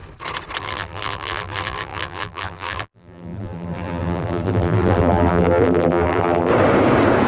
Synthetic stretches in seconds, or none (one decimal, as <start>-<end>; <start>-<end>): 0.6-6.5